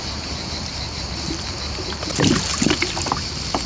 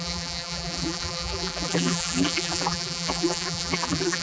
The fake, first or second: second